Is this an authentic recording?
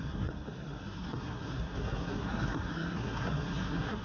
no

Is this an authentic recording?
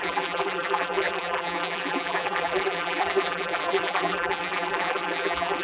no